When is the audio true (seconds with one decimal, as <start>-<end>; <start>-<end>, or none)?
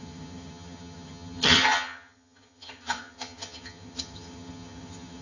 none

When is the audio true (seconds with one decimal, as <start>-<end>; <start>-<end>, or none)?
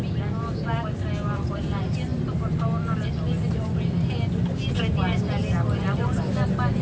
0.0-6.8